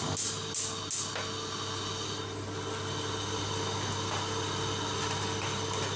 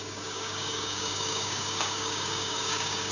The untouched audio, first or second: first